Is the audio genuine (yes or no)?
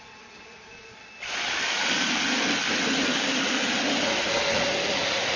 yes